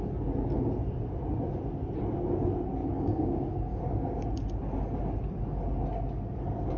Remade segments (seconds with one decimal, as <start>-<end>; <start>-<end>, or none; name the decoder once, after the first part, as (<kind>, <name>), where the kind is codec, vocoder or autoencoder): 2.8-3.8 (codec, DAC)